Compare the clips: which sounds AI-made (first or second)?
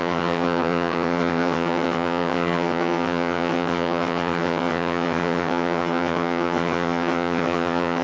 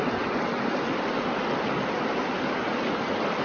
first